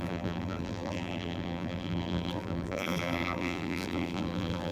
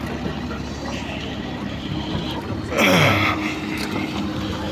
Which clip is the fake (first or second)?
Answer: first